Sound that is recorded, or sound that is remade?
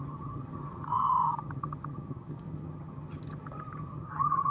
remade